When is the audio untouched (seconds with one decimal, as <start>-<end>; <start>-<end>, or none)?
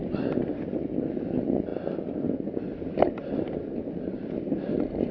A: 0.0-5.1